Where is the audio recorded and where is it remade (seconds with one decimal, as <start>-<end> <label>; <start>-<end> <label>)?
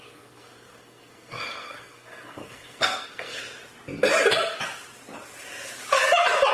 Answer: 0.0-3.4 remade; 3.4-6.5 recorded